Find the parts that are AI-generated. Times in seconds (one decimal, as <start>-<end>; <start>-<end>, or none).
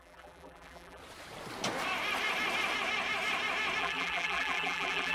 0.0-1.0; 3.8-5.1